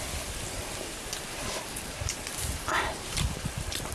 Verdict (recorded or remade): remade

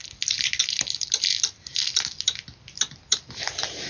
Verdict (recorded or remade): recorded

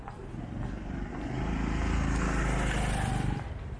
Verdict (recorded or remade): recorded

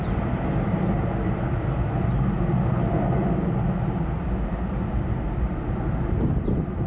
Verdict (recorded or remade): recorded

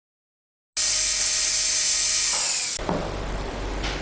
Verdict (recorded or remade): recorded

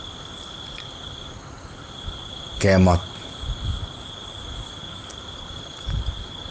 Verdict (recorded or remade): remade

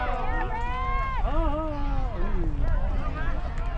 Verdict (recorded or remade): recorded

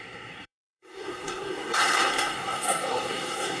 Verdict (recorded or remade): remade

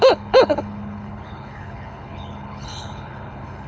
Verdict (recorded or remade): remade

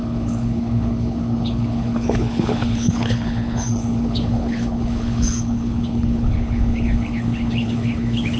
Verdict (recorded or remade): remade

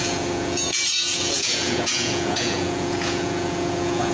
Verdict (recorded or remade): remade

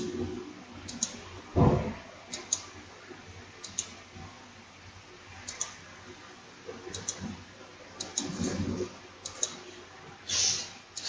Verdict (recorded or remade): recorded